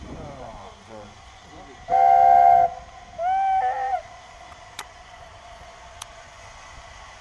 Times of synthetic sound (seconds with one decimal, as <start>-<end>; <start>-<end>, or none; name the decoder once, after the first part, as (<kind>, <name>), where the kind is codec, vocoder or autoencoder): 0.0-1.4 (vocoder, Vocos); 3.9-7.2